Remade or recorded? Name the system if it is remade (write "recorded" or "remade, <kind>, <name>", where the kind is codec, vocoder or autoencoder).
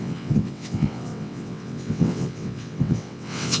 remade, vocoder, WaveNeXt